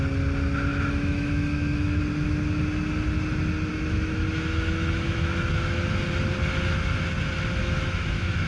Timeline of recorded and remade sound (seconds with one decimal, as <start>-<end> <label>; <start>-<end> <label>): 0.0-0.7 recorded; 0.7-2.0 remade; 2.0-3.7 recorded; 3.7-5.9 remade; 5.9-7.6 recorded; 7.6-8.5 remade